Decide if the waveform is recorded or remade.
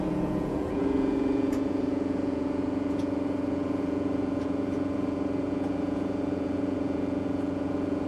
remade